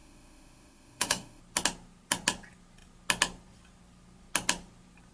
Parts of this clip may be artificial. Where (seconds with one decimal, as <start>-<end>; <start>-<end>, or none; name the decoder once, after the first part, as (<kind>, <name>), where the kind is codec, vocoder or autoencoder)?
0.0-1.4 (autoencoder, DAC-VAE)